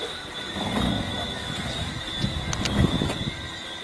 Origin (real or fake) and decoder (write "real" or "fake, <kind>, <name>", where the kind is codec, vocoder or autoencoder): real